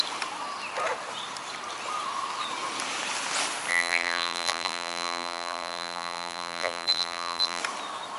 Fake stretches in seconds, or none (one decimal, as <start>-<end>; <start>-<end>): 3.7-7.6